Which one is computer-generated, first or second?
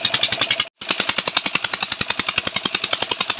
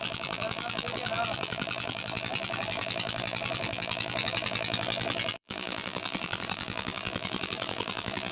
second